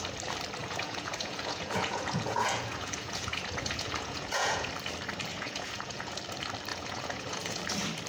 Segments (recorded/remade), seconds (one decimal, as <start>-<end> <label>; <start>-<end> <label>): 0.0-0.6 recorded; 0.6-4.7 remade; 4.7-5.3 recorded; 5.3-6.2 remade; 6.2-6.7 recorded; 6.7-7.6 remade; 7.6-8.1 recorded